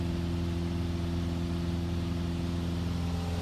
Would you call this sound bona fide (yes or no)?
yes